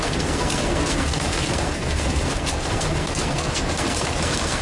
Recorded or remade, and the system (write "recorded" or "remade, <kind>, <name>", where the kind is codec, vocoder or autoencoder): remade, codec, SNAC